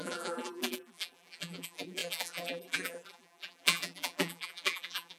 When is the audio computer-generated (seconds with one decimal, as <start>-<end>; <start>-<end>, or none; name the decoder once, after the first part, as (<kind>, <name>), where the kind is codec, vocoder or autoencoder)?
0.0-5.2 (vocoder, BigVGAN v2)